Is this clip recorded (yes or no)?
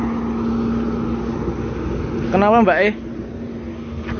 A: yes